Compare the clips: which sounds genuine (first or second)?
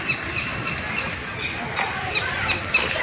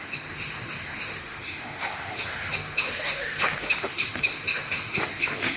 first